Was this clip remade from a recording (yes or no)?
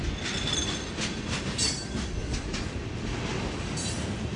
no